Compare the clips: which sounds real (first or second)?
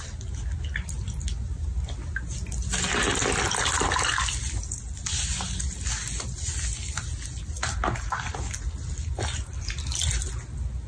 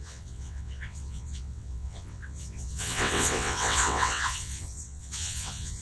first